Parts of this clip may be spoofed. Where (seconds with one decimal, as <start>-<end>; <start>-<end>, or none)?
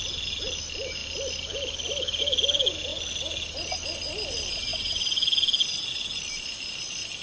none